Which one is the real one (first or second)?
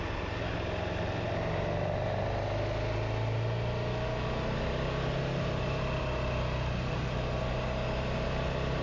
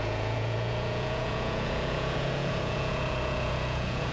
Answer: first